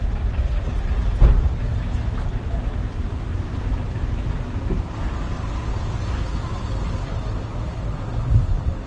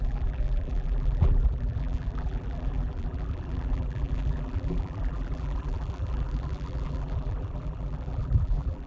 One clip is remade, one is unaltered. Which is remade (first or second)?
second